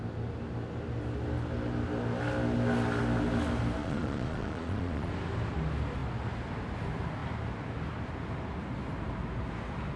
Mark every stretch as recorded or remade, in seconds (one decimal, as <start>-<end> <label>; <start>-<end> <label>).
0.0-3.8 recorded; 3.8-5.1 remade; 5.1-10.0 recorded